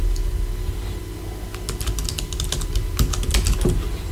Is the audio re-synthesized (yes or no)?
no